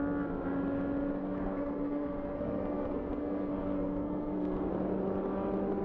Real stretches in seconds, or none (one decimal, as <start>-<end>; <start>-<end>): 0.0-1.2; 4.7-5.8